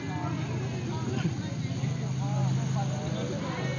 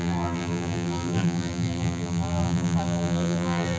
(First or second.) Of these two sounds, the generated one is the second